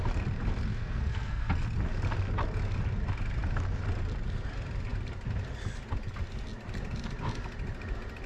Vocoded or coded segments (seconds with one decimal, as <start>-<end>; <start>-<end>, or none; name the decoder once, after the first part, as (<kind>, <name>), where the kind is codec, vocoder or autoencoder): 0.7-1.6 (codec, SNAC)